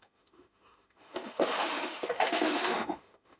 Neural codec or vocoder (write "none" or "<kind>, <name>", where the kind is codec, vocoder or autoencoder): autoencoder, DAC-VAE